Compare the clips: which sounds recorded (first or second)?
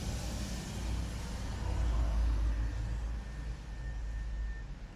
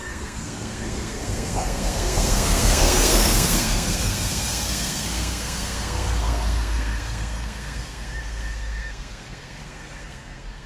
first